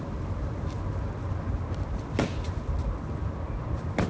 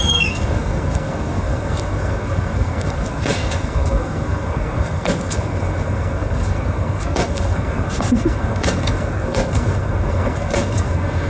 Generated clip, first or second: second